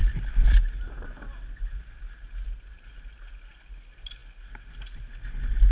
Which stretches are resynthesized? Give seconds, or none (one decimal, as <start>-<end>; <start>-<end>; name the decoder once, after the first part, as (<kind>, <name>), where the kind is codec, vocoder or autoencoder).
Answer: 0.0-3.4 (vocoder, BigVGAN v2)